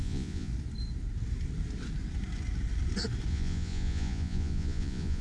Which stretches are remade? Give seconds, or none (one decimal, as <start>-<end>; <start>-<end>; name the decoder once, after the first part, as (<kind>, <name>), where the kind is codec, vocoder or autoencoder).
0.0-0.5 (vocoder, Vocos); 3.3-5.2